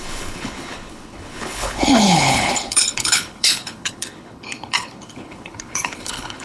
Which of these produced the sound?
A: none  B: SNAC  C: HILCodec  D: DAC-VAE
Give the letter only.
C